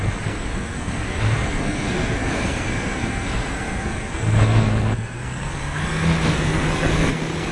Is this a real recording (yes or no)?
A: no